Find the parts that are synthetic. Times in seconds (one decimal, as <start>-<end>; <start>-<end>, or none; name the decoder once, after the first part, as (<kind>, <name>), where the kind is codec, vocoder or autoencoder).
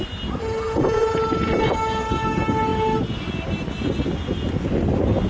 none